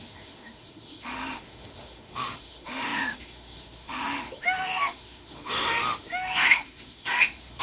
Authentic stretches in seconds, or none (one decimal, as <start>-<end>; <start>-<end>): none